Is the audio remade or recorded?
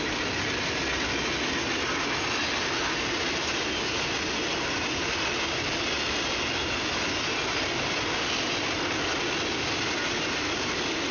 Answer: recorded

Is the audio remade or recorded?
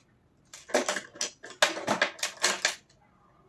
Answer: recorded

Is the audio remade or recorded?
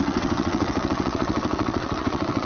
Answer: remade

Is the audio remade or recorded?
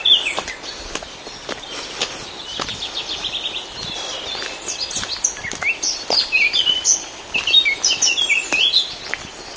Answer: recorded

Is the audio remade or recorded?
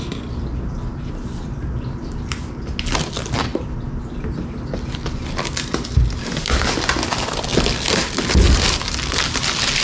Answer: recorded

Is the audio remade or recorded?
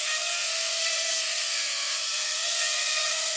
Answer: remade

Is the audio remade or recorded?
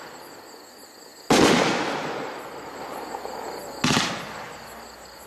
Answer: recorded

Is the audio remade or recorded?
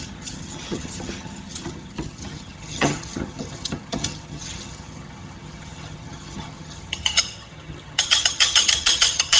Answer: remade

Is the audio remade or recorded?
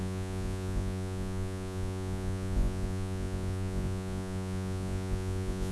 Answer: remade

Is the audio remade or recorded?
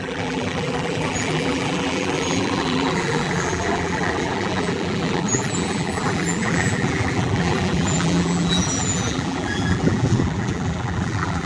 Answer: remade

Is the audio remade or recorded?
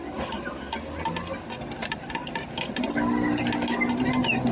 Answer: recorded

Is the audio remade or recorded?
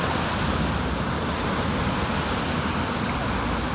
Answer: recorded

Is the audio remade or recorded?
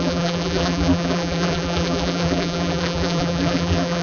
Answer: remade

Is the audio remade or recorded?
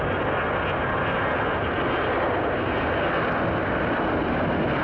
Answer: recorded